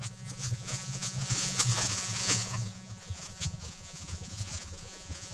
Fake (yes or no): yes